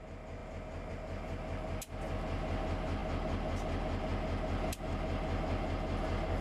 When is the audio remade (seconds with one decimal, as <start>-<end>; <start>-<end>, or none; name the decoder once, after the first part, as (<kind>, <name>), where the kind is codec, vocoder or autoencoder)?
none